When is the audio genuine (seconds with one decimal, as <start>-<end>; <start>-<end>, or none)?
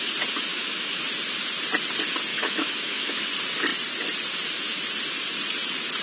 0.0-0.5; 1.0-2.3; 3.3-6.0